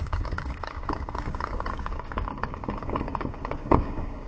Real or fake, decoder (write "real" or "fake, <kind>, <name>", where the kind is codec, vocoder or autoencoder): fake, codec, DAC